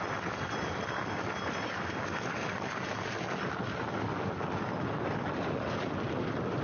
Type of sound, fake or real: real